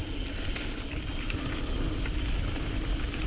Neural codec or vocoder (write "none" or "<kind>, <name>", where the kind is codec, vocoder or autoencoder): none